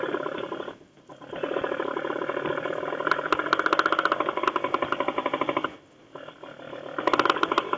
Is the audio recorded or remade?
recorded